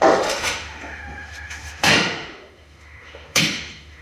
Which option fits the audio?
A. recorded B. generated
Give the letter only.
B